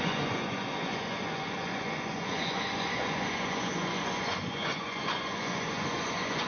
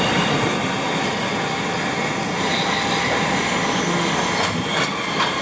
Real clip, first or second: second